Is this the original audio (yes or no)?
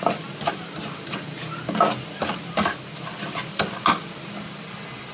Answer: yes